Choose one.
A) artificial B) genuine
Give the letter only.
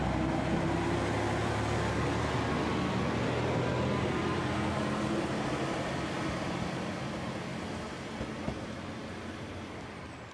B